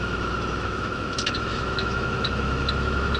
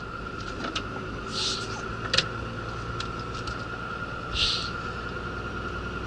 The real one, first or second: second